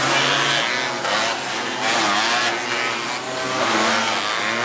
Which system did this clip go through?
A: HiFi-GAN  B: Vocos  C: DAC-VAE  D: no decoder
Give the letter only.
D